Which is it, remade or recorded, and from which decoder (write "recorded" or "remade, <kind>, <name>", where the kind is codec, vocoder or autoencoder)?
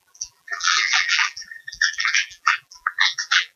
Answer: remade, vocoder, BigVGAN v2